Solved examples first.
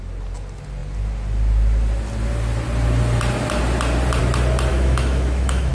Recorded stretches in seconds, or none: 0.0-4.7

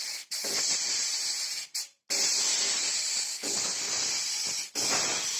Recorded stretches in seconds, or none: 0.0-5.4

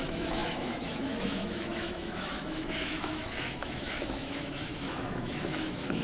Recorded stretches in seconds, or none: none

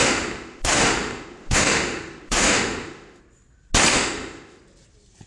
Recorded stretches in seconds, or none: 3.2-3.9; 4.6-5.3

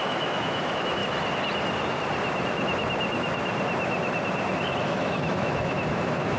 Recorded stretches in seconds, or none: 1.0-4.8